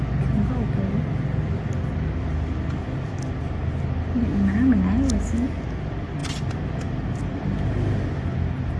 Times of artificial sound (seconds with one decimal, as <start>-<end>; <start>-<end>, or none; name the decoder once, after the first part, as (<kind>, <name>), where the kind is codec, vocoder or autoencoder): none